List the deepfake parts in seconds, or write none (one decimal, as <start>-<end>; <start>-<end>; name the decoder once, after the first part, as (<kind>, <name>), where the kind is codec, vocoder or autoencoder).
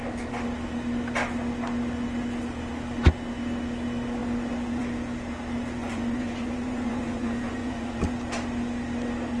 5.8-8.1 (vocoder, Vocos)